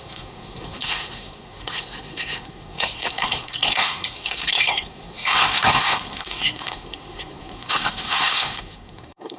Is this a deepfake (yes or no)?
yes